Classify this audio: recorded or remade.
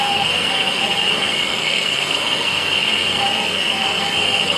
remade